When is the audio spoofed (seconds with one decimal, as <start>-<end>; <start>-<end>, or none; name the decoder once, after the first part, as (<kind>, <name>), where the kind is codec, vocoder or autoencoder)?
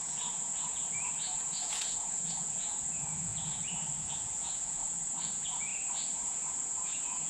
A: 0.0-7.3 (vocoder, Vocos)